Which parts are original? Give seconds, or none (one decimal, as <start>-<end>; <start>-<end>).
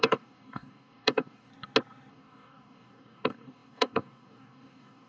1.5-2.1